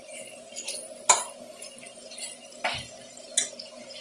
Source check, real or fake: real